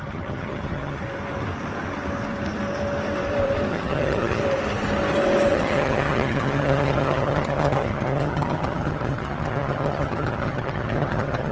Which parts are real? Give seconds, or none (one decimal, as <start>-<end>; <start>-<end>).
1.0-3.7; 4.4-5.5